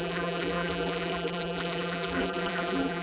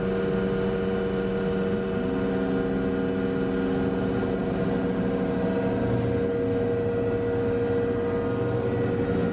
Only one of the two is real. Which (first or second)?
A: second